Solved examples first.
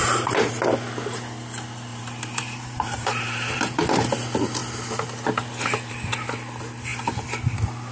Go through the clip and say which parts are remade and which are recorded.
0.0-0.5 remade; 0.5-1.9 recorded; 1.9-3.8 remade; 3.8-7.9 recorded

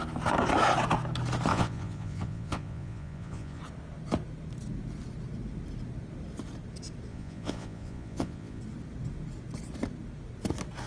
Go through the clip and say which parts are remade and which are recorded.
0.0-1.5 recorded; 1.5-3.6 remade; 3.6-7.1 recorded; 7.1-8.6 remade; 8.6-10.9 recorded